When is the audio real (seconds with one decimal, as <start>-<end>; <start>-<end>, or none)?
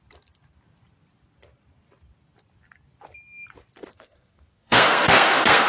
0.0-3.8